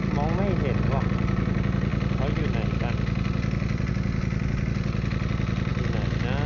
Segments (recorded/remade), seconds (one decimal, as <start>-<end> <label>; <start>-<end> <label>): 0.0-6.5 recorded